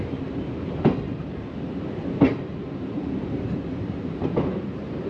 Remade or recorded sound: remade